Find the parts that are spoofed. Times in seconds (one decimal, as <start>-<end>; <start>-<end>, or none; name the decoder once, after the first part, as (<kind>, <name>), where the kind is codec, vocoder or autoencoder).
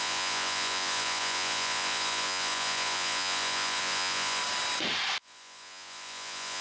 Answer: 0.0-4.4 (vocoder, Vocos); 5.2-6.6